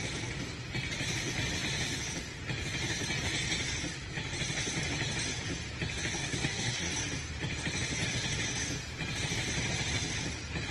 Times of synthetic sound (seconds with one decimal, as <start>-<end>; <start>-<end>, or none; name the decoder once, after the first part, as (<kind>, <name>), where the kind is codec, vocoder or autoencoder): 6.2-6.9 (codec, SNAC)